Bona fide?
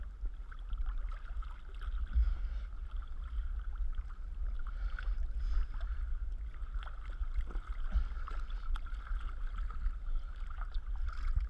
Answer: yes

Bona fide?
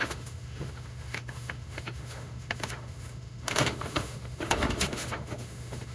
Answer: no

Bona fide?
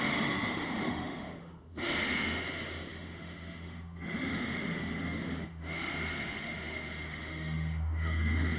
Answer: no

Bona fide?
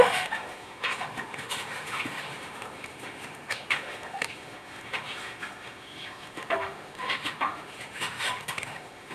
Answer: no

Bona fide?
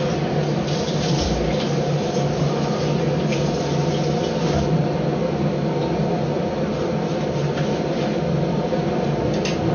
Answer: yes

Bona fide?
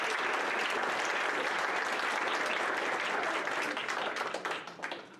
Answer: yes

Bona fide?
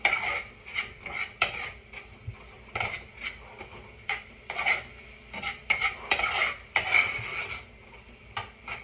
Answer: yes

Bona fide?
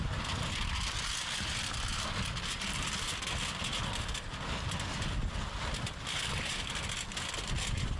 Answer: yes